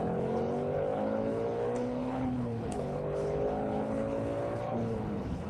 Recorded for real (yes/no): no